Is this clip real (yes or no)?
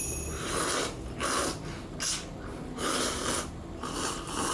yes